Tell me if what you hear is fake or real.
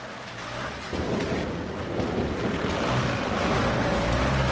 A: real